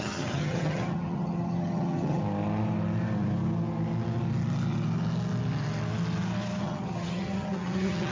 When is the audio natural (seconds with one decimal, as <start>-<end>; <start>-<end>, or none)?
2.2-6.6

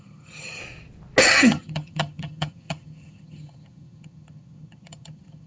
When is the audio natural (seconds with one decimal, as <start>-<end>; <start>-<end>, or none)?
0.6-1.2

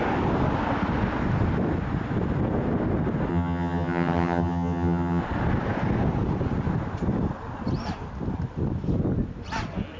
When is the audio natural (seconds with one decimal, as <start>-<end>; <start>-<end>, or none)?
0.0-3.3; 5.2-10.0

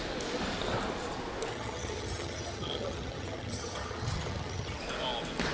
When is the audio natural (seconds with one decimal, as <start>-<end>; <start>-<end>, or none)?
0.0-1.5; 4.8-5.5

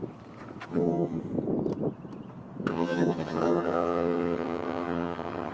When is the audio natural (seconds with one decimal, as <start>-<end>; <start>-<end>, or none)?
0.0-0.7; 1.2-2.7

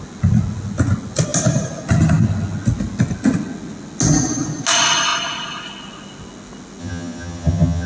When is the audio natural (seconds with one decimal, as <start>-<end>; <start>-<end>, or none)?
0.0-6.8

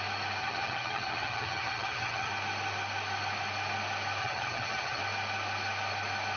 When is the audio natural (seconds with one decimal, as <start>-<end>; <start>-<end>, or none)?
0.0-0.4; 2.3-4.2; 5.0-6.4